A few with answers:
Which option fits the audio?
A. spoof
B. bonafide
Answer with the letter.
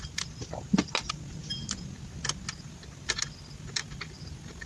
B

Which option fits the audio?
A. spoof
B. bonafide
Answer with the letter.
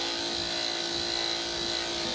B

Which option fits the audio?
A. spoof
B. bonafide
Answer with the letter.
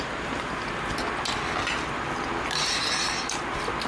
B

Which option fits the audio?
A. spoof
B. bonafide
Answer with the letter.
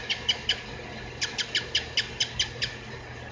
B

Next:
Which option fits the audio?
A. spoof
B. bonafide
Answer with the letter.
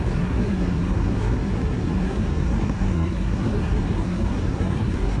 A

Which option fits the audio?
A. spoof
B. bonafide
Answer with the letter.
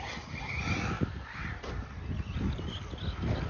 B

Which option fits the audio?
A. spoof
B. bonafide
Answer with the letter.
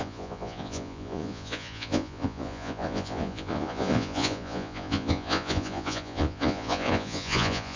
A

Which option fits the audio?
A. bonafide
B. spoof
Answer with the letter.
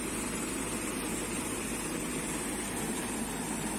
A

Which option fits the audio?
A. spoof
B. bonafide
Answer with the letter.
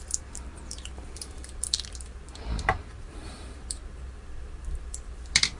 A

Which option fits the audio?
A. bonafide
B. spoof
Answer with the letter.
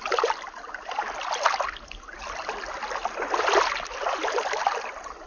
A